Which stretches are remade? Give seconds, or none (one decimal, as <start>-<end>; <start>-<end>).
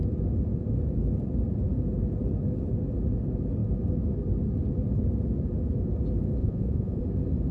6.4-7.0